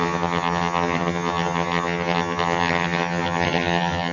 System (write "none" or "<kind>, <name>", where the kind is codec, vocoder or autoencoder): vocoder, HiFi-GAN